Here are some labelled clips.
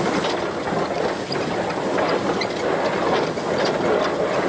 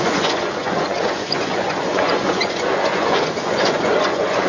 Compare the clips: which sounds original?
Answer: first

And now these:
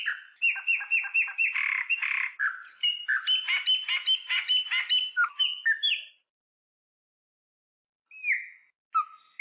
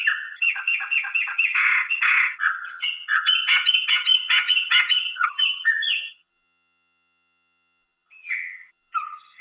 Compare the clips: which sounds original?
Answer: first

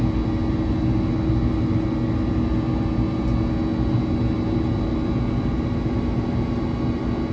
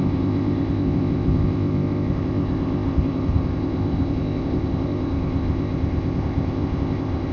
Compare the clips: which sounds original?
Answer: first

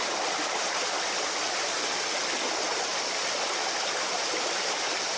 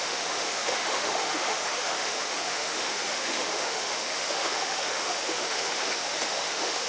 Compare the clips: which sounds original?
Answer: first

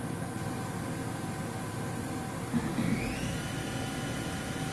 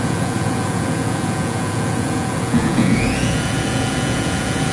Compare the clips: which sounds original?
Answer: first